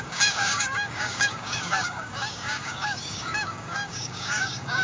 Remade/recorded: remade